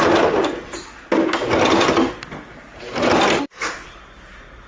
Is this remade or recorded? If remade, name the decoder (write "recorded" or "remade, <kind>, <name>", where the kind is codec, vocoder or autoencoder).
recorded